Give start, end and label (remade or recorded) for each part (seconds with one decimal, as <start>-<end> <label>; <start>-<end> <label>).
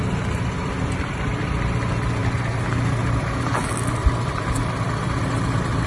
0.0-5.9 recorded